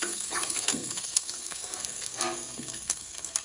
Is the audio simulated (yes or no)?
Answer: yes